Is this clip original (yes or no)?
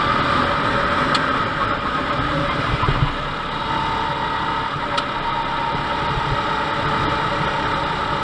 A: yes